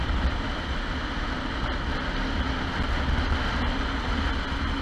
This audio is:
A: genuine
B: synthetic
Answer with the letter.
A